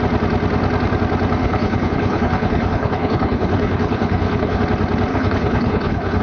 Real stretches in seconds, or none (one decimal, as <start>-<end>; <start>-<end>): 0.0-1.4; 4.6-5.1